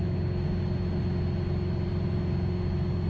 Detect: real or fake real